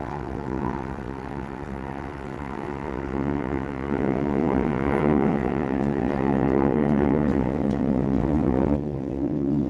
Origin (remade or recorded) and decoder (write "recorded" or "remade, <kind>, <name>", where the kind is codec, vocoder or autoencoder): remade, vocoder, WaveNeXt